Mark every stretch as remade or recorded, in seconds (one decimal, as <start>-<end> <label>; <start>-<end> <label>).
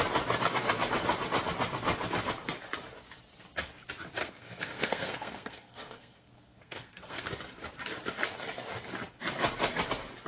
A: 0.0-4.2 recorded; 4.2-7.3 remade; 7.3-10.3 recorded